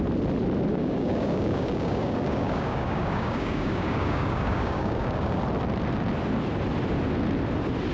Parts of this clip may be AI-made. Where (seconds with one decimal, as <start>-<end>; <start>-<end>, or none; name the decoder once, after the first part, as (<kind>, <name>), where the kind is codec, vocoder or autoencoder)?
0.7-5.4 (codec, DAC)